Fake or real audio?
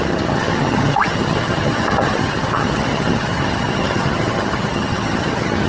fake